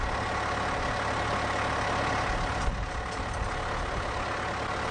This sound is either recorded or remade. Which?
recorded